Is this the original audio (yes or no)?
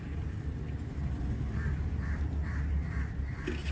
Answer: yes